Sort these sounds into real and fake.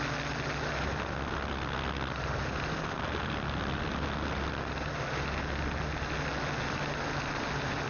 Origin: real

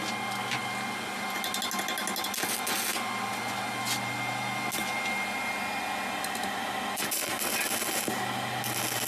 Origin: real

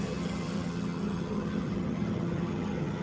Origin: fake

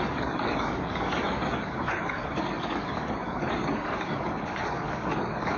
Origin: fake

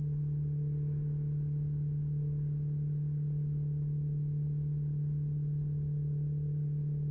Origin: real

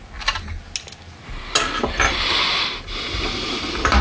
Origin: real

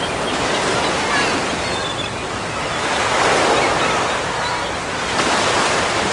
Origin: real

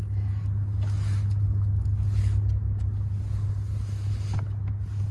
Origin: real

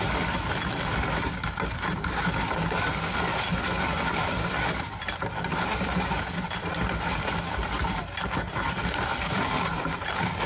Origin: real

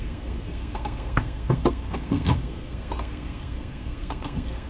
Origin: fake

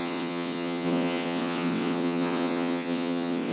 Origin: fake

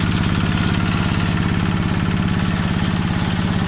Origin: real